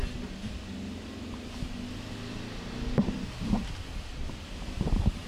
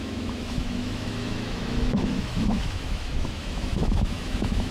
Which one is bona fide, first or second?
first